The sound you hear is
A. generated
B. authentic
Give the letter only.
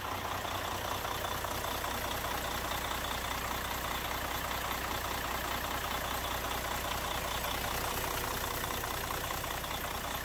B